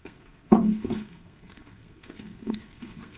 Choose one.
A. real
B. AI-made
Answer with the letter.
B